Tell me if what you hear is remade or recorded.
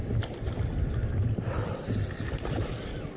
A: recorded